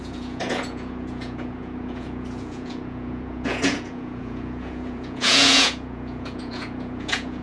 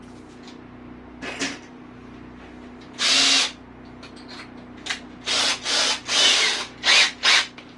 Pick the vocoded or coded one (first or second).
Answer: first